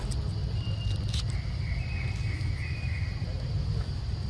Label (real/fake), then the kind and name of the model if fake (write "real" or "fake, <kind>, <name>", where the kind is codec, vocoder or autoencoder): real